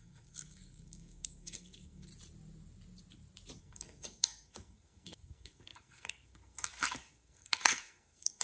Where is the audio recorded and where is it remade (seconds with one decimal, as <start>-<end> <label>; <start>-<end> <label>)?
0.0-2.1 remade; 2.1-3.6 recorded; 3.6-8.4 remade